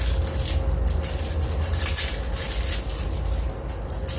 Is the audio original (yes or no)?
yes